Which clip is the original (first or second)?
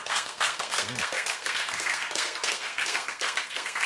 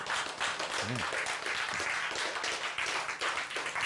second